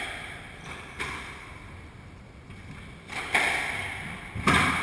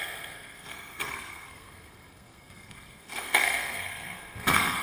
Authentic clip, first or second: first